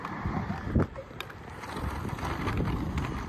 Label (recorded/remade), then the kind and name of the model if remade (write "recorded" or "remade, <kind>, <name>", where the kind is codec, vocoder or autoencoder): remade, vocoder, BigVGAN v2